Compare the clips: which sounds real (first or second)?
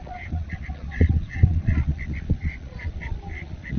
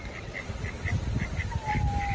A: second